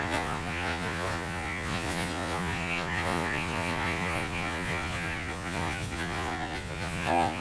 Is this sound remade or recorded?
remade